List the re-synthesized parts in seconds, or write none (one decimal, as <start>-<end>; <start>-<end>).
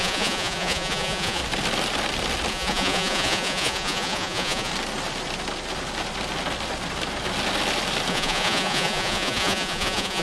0.0-1.4; 2.5-4.7; 8.1-10.2